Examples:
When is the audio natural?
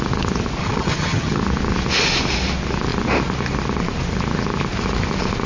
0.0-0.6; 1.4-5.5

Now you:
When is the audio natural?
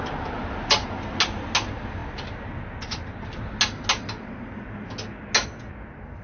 0.0-6.2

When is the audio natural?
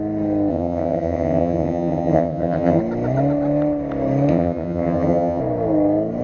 0.0-0.5; 2.8-4.3; 5.4-6.2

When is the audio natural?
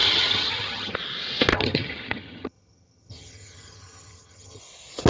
0.9-1.5; 4.6-5.1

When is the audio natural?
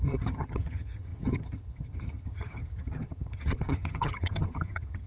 none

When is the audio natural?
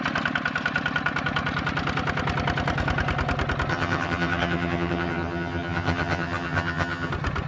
0.0-3.7; 7.1-7.5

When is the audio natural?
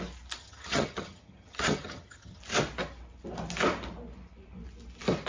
0.0-0.4; 2.4-5.3